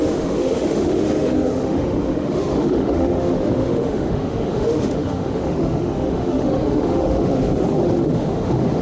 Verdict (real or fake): fake